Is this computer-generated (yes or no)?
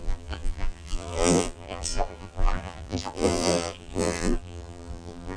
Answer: yes